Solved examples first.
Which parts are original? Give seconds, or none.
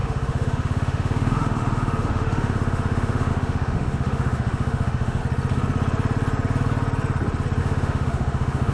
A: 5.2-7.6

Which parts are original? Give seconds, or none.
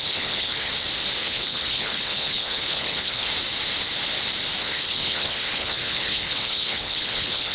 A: 0.7-1.2; 3.3-4.6